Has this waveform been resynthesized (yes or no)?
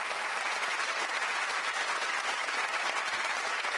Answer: no